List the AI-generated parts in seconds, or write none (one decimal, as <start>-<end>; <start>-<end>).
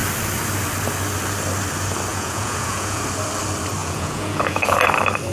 2.1-3.0; 3.8-4.6